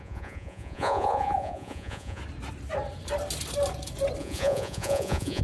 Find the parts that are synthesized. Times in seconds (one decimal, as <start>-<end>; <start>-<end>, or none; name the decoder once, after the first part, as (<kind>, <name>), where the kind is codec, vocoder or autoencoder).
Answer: 0.0-2.2 (vocoder, Vocos); 4.2-5.4